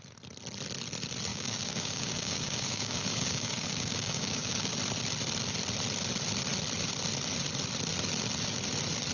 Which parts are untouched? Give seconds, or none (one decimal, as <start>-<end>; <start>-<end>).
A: 0.0-1.3; 4.7-9.1

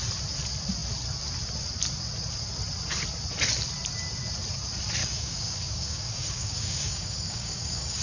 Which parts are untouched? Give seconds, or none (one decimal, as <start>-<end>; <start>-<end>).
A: 0.0-5.0

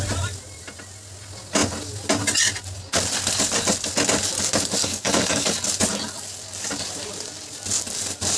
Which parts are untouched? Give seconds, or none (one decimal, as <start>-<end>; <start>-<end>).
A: 0.0-4.8; 5.5-8.4

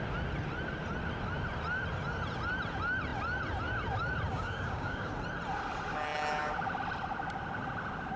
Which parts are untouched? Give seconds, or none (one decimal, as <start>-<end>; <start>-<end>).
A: 0.0-4.3; 5.1-8.2

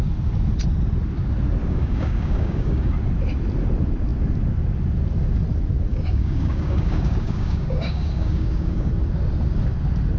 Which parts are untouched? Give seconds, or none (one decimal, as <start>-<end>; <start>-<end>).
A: 0.0-1.6; 2.9-5.9; 8.9-10.2

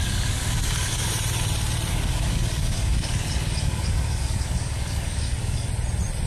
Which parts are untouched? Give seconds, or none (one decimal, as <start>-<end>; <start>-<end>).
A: 1.1-1.9; 5.7-6.3

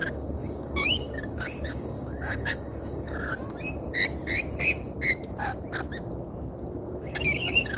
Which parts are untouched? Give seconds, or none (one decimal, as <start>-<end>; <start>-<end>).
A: 3.4-6.8